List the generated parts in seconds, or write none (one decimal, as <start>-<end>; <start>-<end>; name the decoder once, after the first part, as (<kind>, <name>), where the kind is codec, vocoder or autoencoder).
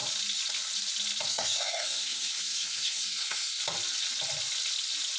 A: 1.3-3.6 (codec, SNAC)